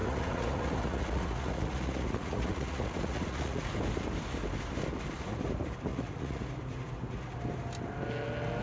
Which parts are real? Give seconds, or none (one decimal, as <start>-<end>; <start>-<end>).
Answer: 3.6-5.9; 6.4-8.6